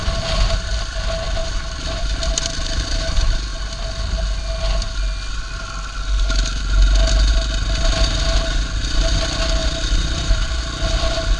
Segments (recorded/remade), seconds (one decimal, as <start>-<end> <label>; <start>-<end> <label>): 0.0-1.4 recorded; 1.4-3.0 remade; 3.0-9.6 recorded; 9.6-10.6 remade; 10.6-11.4 recorded